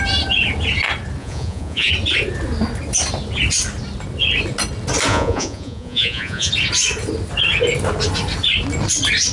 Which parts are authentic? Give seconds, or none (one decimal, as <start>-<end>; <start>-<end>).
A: 0.0-1.2; 1.9-5.1; 6.5-9.3